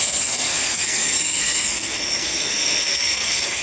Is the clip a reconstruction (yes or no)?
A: yes